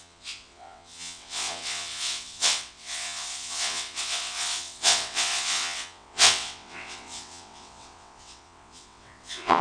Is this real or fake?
fake